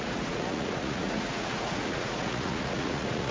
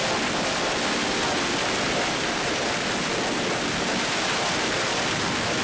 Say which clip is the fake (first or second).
first